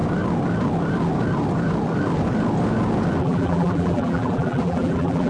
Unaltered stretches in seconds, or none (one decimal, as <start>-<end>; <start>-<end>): 0.0-3.2

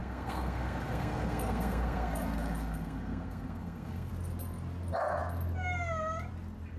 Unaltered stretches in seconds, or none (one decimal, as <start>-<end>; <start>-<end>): 4.1-6.8

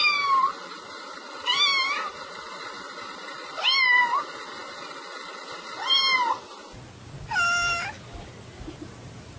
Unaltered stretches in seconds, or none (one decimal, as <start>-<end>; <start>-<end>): 0.0-9.4

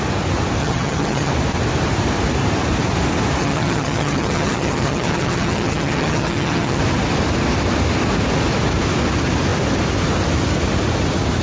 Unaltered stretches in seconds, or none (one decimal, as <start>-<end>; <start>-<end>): 0.0-0.6; 1.3-3.4; 6.8-11.4

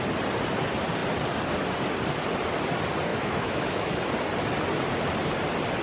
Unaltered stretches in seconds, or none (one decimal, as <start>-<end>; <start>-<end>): 0.0-3.1; 4.0-5.8